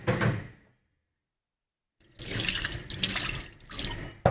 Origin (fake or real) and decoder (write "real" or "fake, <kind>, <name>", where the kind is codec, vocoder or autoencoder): real